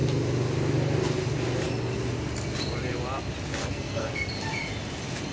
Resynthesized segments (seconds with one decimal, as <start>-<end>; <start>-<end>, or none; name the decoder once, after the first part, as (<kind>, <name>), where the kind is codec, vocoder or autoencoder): 3.6-4.3 (codec, SNAC)